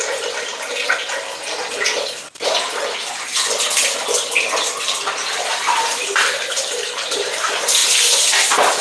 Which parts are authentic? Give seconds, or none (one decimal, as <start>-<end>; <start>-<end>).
0.5-5.5; 7.8-8.8